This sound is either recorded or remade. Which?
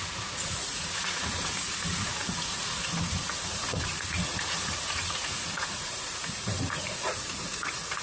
remade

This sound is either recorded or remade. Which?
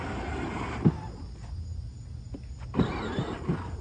recorded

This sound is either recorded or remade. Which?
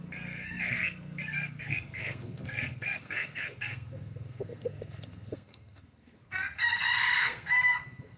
remade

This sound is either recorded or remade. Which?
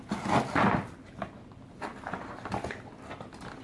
recorded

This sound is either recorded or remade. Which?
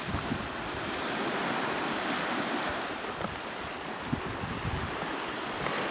recorded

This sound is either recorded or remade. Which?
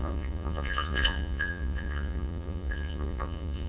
remade